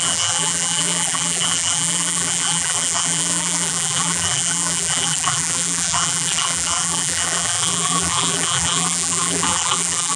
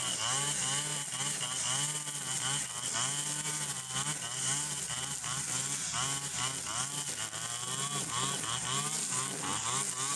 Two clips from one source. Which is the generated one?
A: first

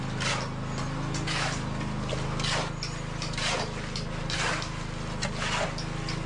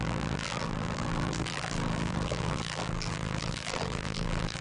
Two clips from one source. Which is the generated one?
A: second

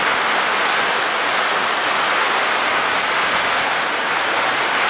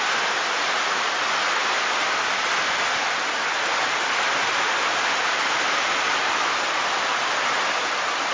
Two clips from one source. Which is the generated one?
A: second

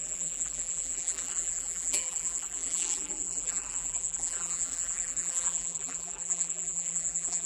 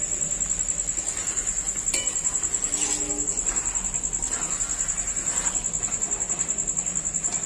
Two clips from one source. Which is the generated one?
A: first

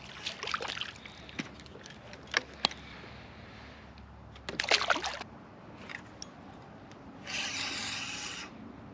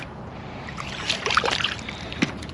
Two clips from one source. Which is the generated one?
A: second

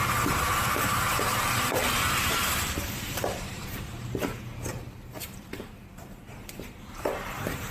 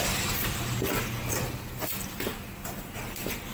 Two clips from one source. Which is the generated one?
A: first